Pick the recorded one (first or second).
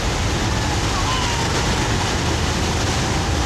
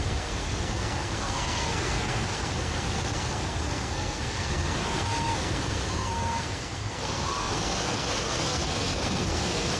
first